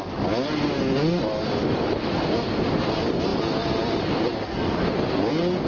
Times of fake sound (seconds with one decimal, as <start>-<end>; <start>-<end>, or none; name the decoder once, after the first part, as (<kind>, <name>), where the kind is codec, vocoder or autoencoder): none